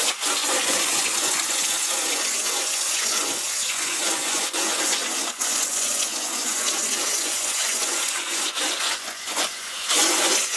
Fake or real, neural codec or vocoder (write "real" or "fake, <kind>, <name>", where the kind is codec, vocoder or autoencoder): fake, vocoder, Vocos